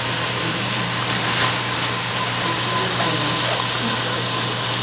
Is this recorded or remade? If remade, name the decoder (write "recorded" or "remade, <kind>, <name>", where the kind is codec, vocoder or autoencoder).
recorded